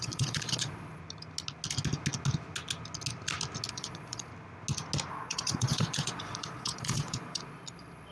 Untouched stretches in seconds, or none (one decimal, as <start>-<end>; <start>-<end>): 1.0-3.7; 4.3-5.1